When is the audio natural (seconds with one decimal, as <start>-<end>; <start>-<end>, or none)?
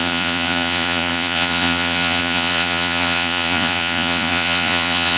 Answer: none